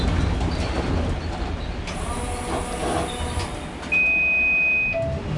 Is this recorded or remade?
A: recorded